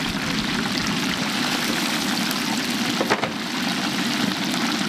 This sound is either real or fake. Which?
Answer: real